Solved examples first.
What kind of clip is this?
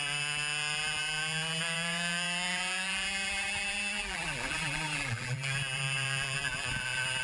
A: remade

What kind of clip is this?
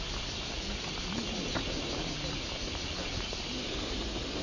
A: recorded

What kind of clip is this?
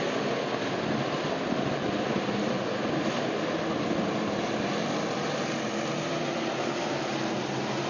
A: recorded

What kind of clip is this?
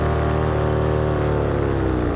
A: remade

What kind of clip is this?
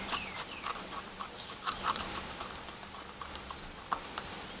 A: remade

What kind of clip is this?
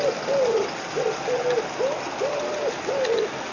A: recorded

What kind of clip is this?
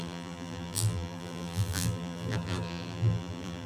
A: remade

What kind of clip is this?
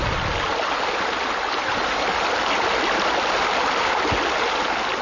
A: recorded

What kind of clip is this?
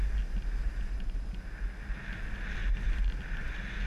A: recorded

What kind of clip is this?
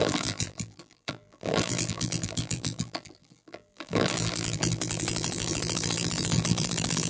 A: remade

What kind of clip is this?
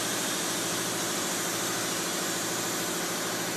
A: recorded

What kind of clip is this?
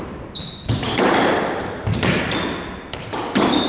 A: recorded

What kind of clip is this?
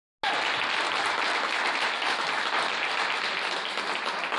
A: recorded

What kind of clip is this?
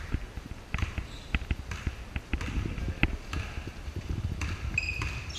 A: recorded